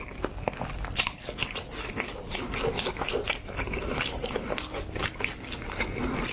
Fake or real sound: real